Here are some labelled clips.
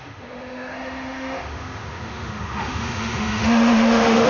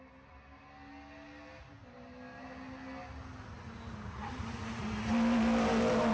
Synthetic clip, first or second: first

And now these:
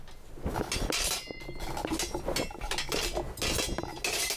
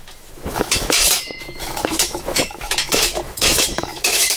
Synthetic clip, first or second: second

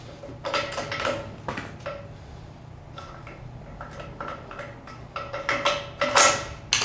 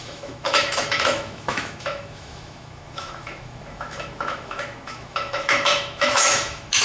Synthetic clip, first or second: second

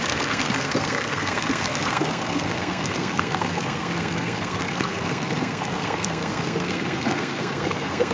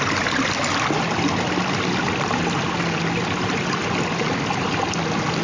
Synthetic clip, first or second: first